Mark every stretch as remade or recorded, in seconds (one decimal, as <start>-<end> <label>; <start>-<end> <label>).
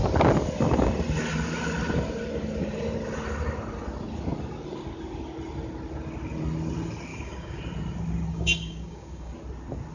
0.0-7.1 recorded; 7.1-7.6 remade; 7.6-8.3 recorded; 8.3-9.3 remade; 9.3-9.9 recorded